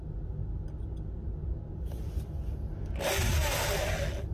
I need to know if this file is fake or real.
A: real